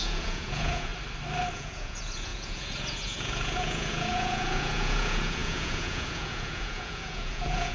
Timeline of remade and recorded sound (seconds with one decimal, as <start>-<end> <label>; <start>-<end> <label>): 0.0-0.9 remade; 0.9-1.5 recorded; 1.5-7.7 remade